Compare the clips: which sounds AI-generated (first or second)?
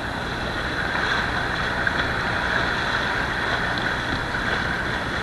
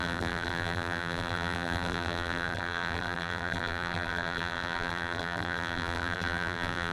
second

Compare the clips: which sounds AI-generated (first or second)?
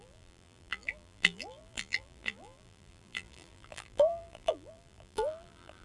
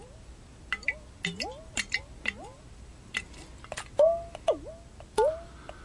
first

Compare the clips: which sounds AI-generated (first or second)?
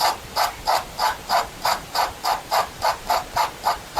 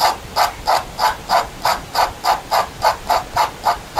first